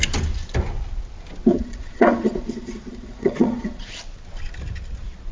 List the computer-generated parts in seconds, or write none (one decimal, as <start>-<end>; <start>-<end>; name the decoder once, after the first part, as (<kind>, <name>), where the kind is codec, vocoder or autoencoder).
1.5-4.0 (vocoder, Vocos)